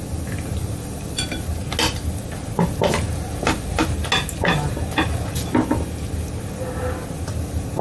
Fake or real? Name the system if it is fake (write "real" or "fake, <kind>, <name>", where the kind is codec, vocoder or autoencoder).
real